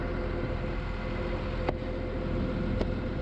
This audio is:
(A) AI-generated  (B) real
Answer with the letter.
B